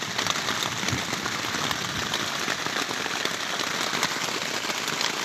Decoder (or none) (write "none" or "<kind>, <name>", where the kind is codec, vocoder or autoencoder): none